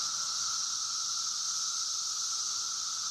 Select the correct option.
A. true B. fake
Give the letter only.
A